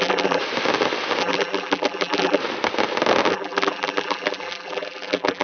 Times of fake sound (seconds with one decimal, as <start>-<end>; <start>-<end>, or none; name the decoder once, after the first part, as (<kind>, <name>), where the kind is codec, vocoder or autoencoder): 0.0-0.4 (vocoder, BigVGAN v2); 1.2-2.4; 3.3-5.4